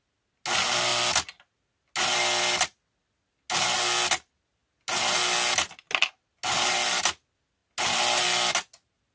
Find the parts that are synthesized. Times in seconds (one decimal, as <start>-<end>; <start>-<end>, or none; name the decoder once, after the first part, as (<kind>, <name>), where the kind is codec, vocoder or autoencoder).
none